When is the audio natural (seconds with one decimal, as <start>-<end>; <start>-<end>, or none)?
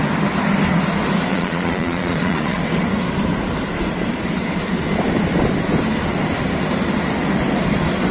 0.0-1.3; 2.6-8.1